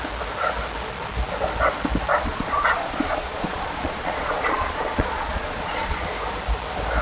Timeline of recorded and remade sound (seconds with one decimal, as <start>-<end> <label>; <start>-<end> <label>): 0.0-2.1 recorded; 2.1-6.1 remade; 6.1-7.0 recorded